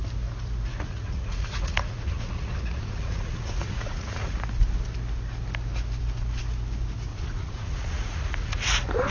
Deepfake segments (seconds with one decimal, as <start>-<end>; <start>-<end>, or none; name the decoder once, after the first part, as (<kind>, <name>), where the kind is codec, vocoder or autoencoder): 0.7-4.4 (vocoder, Vocos); 7.1-9.1